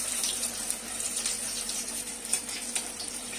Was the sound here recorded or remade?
remade